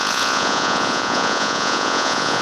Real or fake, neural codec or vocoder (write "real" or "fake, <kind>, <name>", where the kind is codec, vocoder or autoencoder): fake, vocoder, Vocos